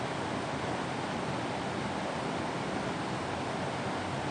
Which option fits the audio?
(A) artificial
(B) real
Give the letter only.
B